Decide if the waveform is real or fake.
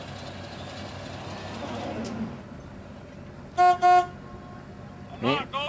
real